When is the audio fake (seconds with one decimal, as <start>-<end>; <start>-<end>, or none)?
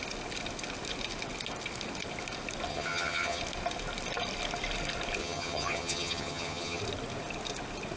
2.7-3.4; 5.2-6.8